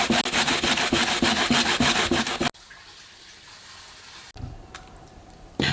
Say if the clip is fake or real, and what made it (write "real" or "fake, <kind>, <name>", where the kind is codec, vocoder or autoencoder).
real